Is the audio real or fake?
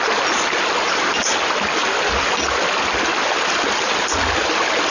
real